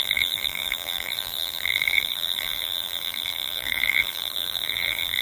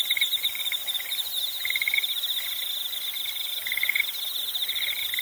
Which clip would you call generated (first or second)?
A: first